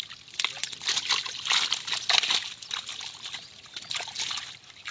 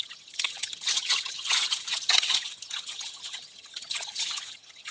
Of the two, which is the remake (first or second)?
second